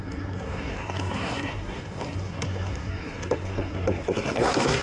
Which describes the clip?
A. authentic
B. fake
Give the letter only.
B